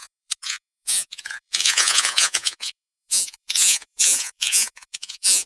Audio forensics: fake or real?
fake